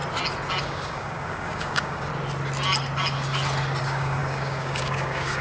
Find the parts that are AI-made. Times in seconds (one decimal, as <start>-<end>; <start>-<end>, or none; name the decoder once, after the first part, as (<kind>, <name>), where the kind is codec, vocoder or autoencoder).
0.6-2.1 (codec, DAC); 3.8-5.4